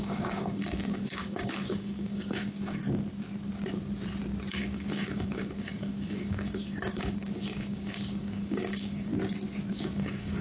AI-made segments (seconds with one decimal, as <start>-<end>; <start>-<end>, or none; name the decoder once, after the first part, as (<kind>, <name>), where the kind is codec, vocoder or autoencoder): 0.0-2.8 (codec, DAC); 4.5-9.1; 9.7-10.4